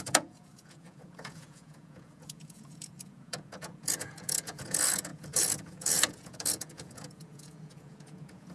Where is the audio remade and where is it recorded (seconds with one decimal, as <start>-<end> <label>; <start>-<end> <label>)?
0.0-8.5 remade